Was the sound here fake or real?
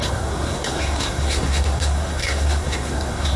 fake